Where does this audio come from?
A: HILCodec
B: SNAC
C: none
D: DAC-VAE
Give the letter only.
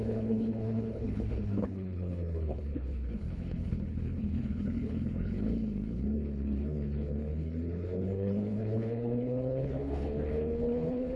A